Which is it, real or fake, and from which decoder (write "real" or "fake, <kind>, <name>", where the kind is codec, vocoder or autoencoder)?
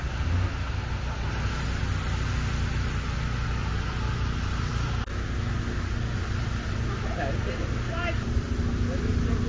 real